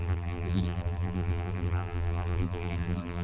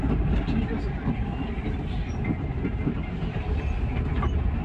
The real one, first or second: second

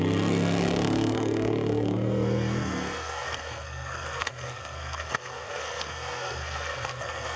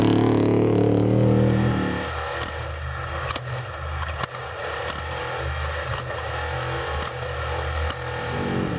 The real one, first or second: second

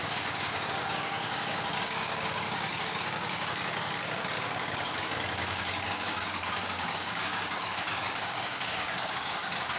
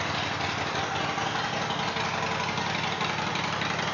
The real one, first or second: second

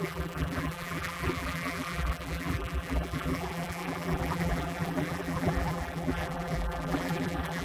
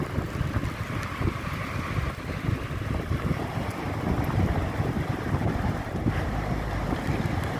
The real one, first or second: second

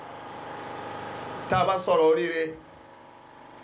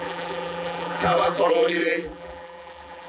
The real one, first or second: first